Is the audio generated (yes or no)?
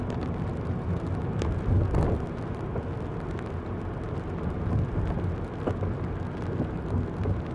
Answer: no